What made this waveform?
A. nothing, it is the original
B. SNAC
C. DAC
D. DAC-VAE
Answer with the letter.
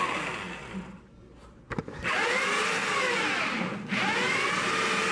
A